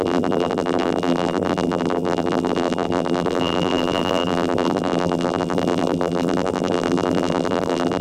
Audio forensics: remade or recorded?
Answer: remade